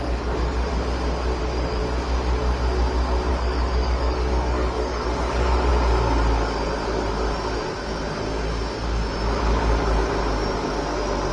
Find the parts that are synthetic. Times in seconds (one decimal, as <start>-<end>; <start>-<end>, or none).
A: 0.0-0.7; 1.4-1.8; 3.3-5.7